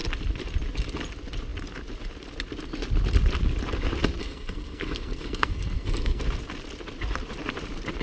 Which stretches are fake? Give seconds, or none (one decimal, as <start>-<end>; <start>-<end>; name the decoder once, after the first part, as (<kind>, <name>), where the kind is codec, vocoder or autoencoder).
4.2-6.2 (codec, SNAC)